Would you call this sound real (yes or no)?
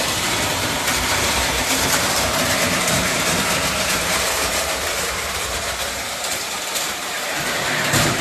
no